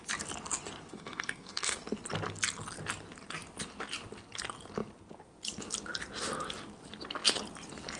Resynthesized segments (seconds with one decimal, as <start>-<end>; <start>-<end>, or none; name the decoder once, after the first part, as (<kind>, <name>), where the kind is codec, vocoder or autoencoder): 0.9-1.8 (codec, SNAC)